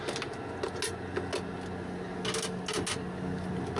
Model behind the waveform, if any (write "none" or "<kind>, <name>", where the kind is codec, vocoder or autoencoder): none